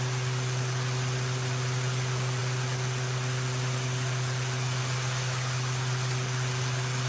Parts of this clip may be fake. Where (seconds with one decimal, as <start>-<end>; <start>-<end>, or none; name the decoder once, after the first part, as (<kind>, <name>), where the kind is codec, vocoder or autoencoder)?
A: none